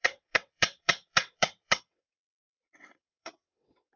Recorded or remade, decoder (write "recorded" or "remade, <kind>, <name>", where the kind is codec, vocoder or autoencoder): remade, vocoder, WaveNeXt